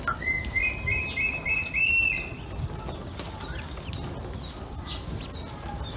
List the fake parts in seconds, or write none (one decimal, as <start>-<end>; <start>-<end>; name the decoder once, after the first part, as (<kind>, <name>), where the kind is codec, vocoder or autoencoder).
none